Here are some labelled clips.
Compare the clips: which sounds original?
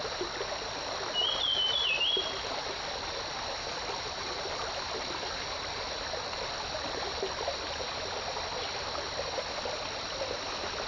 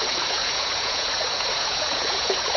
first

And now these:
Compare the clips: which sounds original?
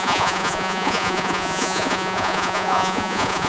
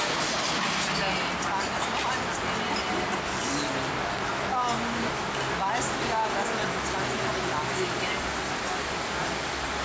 second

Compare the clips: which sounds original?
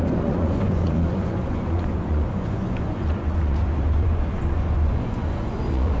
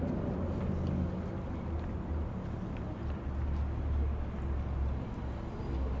second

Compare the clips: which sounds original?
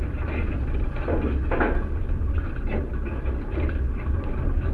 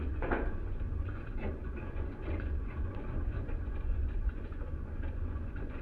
first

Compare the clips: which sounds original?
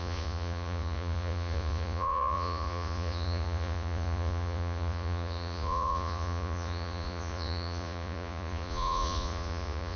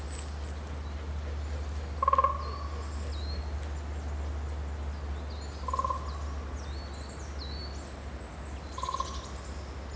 second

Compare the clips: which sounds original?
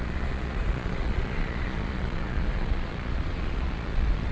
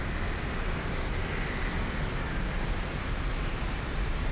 second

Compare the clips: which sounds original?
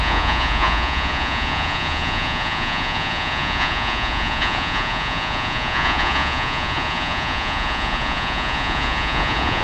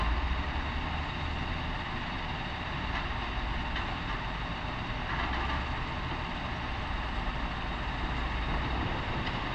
second